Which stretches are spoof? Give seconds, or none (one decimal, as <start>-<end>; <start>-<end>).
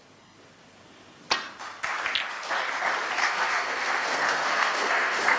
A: 3.2-5.4